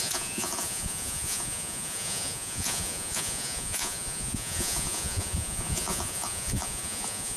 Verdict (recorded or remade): remade